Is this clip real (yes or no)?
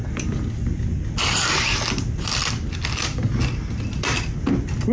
yes